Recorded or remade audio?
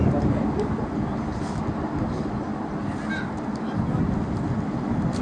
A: recorded